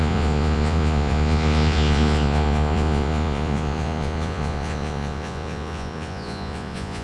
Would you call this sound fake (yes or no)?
yes